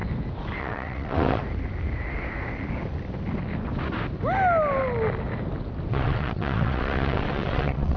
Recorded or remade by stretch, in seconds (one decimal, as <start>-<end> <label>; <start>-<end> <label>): 0.0-0.6 recorded; 0.6-1.4 remade; 1.4-5.9 recorded; 5.9-8.0 remade